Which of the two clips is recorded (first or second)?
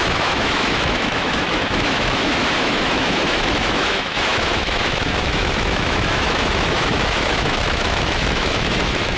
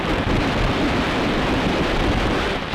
second